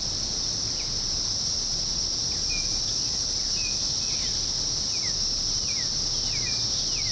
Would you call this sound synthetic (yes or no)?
no